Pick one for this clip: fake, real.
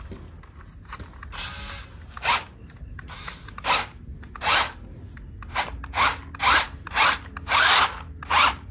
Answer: real